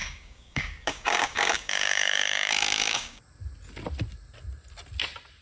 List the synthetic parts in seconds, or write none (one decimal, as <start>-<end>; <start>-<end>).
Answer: 0.0-3.2